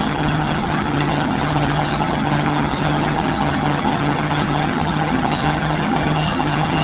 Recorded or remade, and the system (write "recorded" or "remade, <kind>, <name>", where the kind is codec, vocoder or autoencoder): remade, vocoder, HiFi-GAN